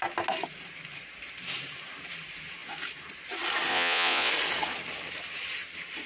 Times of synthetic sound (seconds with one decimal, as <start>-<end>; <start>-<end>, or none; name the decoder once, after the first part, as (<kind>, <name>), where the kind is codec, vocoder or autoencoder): 3.7-4.3 (vocoder, Vocos)